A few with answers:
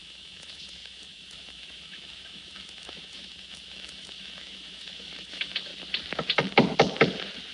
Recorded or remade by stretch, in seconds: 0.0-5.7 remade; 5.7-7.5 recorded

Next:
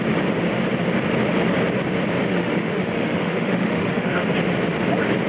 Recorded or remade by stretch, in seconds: 0.0-2.3 recorded; 2.3-4.2 remade; 4.2-5.3 recorded

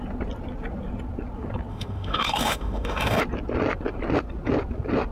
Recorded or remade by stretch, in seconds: 0.0-1.7 recorded; 1.7-3.2 remade; 3.2-5.1 recorded